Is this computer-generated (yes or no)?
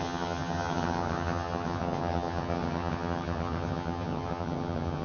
yes